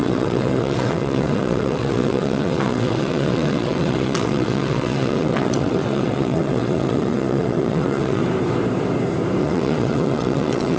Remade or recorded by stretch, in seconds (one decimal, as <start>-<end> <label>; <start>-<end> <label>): 0.0-8.2 remade; 8.2-9.4 recorded; 9.4-10.8 remade